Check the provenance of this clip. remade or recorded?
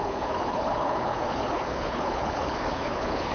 remade